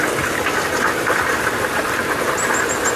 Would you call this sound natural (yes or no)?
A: yes